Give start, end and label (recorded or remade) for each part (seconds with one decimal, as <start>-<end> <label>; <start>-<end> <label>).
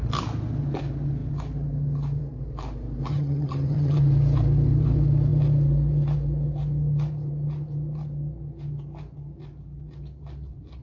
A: 0.0-3.1 recorded; 3.1-4.0 remade; 4.0-10.8 recorded